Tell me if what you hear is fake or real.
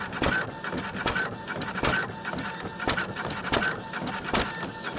real